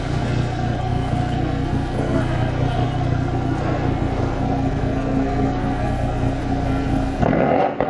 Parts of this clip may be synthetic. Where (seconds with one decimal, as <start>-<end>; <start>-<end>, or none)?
0.0-7.9